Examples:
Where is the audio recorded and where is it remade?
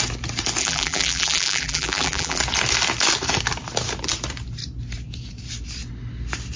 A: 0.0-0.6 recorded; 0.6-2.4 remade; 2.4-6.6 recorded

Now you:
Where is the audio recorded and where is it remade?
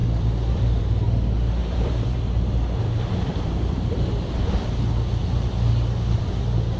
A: 0.0-0.8 remade; 0.8-1.6 recorded; 1.6-4.5 remade; 4.5-6.8 recorded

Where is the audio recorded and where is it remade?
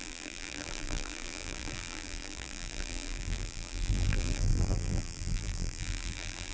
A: 0.0-6.5 remade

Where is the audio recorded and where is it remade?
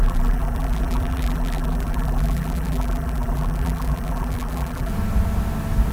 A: 0.0-4.9 remade; 4.9-5.9 recorded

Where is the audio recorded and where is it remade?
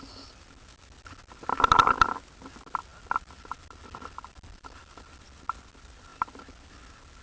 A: 0.0-1.5 recorded; 1.5-2.1 remade; 2.1-2.9 recorded; 2.9-5.2 remade; 5.2-6.1 recorded; 6.1-6.7 remade; 6.7-7.2 recorded